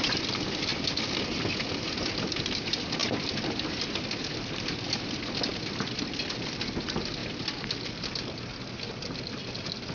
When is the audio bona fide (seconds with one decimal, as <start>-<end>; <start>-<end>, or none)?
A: 0.0-9.9